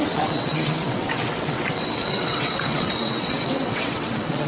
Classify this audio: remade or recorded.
remade